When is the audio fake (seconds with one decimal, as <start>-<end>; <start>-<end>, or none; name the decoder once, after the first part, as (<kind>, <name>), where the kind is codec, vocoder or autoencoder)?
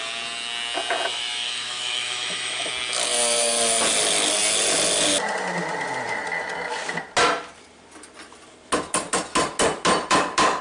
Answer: 1.1-2.7 (autoencoder, DAC-VAE)